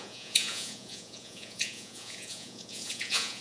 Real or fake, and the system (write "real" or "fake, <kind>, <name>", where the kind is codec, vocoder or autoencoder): fake, vocoder, Vocos